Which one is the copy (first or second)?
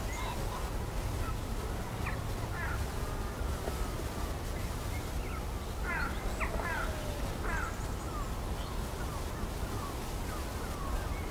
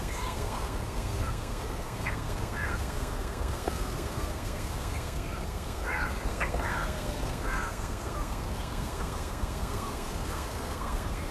second